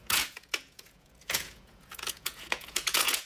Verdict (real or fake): fake